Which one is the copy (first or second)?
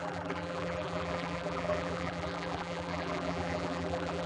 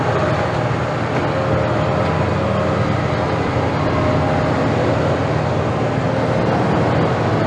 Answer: first